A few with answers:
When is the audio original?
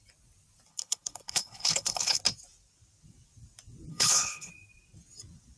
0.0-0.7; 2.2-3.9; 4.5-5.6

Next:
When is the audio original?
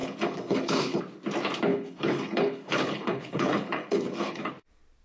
1.0-1.7; 4.5-5.0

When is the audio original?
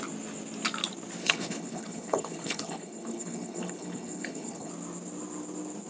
0.0-1.2; 4.7-5.9